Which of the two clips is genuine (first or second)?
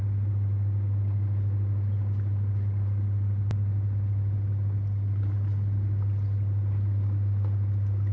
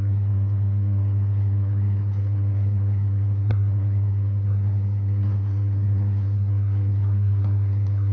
first